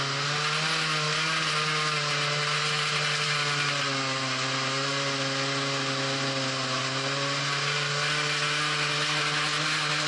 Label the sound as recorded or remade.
recorded